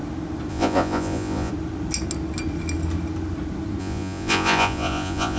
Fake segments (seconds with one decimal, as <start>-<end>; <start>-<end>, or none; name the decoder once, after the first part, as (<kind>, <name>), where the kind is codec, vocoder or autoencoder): 0.5-1.5 (vocoder, Vocos); 3.8-5.4